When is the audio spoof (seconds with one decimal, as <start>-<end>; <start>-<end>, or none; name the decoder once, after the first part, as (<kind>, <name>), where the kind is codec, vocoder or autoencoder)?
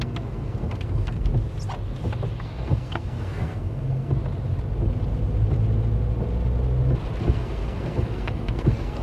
0.0-1.3 (codec, SNAC); 2.4-4.2; 7.2-9.0